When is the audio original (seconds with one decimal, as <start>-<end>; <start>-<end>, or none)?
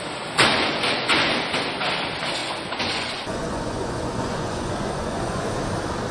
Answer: 0.0-0.5; 1.3-2.4; 5.6-6.1